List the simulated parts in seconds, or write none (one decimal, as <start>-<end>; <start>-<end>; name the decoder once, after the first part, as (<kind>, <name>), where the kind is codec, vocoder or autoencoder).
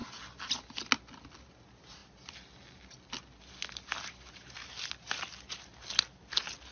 none